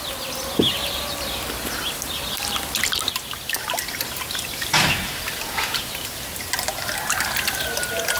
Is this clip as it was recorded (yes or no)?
yes